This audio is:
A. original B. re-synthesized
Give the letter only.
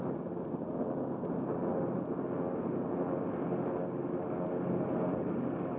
A